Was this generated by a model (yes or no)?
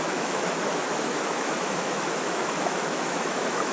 yes